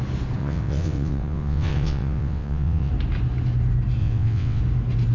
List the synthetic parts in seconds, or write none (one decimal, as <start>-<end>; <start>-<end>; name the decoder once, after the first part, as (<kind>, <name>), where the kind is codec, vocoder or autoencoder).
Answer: 0.4-2.9 (vocoder, WaveNeXt); 4.0-4.6